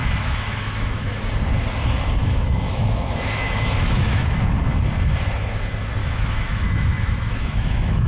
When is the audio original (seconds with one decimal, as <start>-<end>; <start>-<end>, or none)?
1.2-2.2; 4.6-6.0